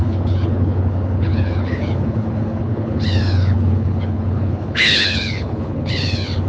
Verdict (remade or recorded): remade